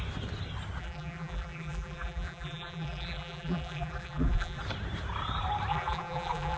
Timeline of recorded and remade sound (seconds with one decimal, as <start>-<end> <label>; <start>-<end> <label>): 0.0-0.8 recorded; 0.8-4.6 remade; 4.6-5.7 recorded; 5.7-6.6 remade